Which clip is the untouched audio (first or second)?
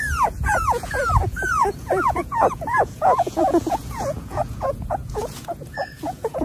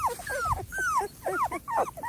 second